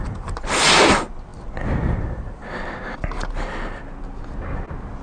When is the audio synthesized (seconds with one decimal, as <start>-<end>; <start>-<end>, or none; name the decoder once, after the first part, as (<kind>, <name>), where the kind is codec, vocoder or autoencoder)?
none